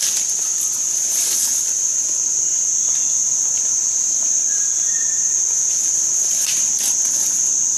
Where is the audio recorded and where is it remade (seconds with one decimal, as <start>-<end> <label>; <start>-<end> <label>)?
0.0-7.8 recorded